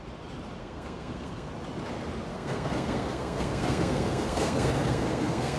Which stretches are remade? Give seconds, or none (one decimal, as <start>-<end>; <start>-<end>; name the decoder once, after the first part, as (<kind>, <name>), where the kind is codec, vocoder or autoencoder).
0.6-1.5 (codec, SNAC); 2.3-5.6